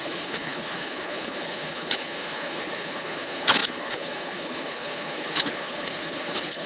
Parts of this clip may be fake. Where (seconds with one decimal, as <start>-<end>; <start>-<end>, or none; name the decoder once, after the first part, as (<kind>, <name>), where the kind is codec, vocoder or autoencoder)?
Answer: 0.0-6.7 (codec, HILCodec)

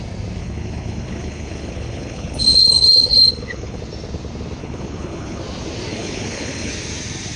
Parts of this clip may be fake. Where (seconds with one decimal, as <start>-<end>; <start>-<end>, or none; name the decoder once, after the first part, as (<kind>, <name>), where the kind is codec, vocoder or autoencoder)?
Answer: 0.4-3.8 (codec, HILCodec); 4.6-5.4; 5.9-6.7

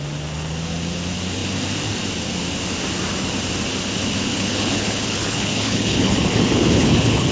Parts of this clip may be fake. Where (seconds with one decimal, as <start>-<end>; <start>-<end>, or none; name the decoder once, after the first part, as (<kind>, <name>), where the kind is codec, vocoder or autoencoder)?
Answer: 4.3-7.3 (codec, HILCodec)

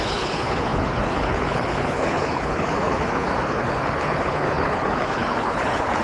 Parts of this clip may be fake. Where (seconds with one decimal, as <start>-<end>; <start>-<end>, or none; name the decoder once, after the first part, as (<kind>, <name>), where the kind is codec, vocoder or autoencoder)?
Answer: 0.0-6.0 (codec, HILCodec)

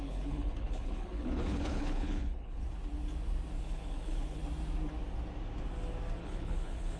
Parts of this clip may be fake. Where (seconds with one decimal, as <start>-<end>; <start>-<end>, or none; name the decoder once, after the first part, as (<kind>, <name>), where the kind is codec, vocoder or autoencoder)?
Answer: 0.0-2.6 (codec, HILCodec); 3.6-4.4; 6.2-7.0